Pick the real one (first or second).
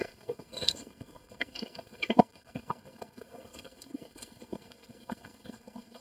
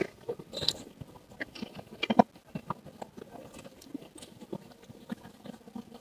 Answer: second